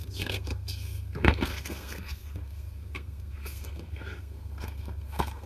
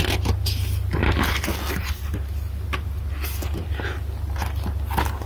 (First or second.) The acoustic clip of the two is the second